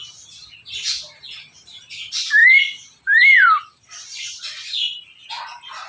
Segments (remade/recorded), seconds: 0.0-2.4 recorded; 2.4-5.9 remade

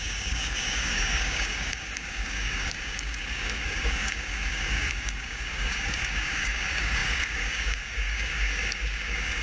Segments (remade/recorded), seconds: 0.0-9.4 remade

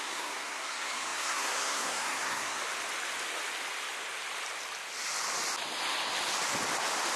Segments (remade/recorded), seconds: 0.0-2.6 remade; 2.6-7.2 recorded

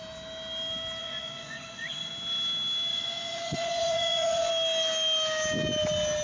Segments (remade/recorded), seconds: 0.0-1.0 recorded; 1.0-2.1 remade; 2.1-2.9 recorded; 2.9-4.5 remade; 4.5-6.2 recorded

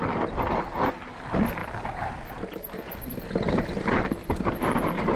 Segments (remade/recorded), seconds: 0.0-4.2 recorded; 4.2-5.2 remade

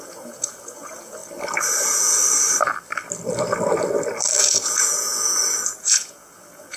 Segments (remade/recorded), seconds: 0.0-1.2 remade; 1.2-1.8 recorded; 1.8-2.2 remade; 2.2-4.4 recorded; 4.4-6.8 remade

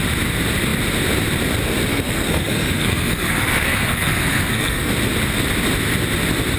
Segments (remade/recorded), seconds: 0.0-1.9 recorded; 1.9-4.9 remade; 4.9-6.6 recorded

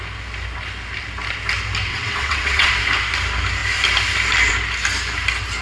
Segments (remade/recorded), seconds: 0.0-1.9 recorded; 1.9-2.7 remade; 2.7-5.6 recorded